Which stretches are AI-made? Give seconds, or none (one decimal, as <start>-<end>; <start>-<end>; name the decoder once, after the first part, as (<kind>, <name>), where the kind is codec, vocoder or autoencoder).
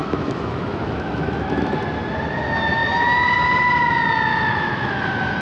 0.0-1.7 (autoencoder, DAC-VAE); 4.3-5.0